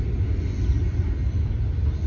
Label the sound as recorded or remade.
recorded